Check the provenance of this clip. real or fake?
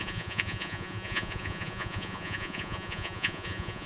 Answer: fake